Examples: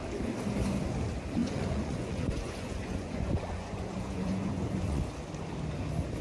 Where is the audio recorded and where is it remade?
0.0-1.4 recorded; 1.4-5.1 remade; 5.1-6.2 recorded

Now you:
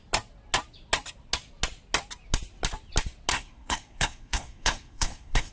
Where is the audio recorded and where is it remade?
0.0-3.3 recorded; 3.3-5.5 remade

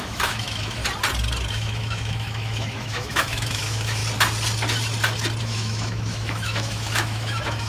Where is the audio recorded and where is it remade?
0.0-0.8 remade; 0.8-1.5 recorded; 1.5-4.0 remade; 4.0-5.4 recorded; 5.4-7.7 remade

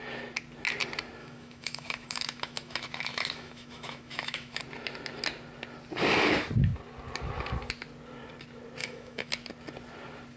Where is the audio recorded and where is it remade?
0.0-1.2 recorded; 1.2-4.6 remade; 4.6-8.8 recorded; 8.8-9.3 remade; 9.3-10.4 recorded